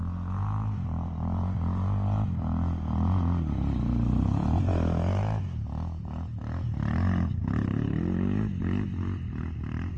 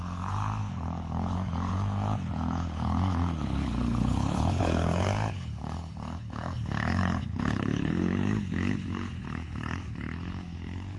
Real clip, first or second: first